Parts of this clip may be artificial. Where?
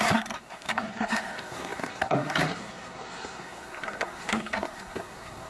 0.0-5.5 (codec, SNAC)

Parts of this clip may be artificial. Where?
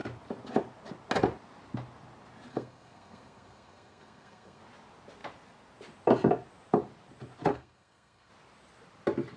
2.5-4.6 (codec, SNAC); 7.5-8.3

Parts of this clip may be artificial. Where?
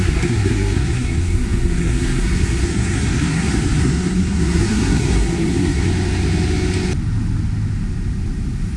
0.0-5.9 (codec, SNAC)